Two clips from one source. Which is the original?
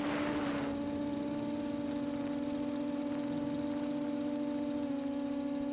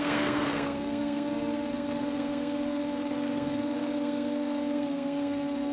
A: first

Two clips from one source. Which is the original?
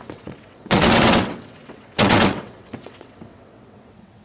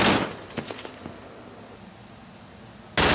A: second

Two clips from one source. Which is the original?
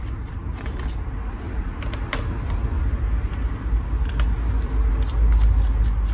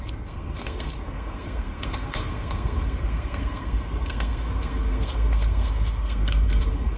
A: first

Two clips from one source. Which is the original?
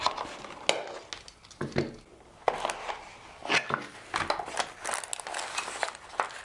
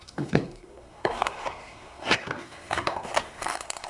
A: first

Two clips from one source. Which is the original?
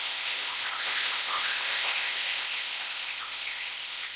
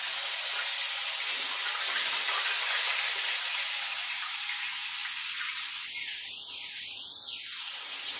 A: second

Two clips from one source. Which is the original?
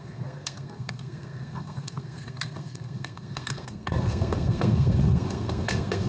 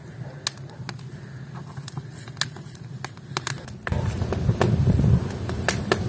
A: second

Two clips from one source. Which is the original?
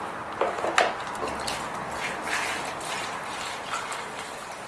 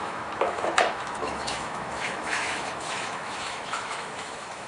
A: first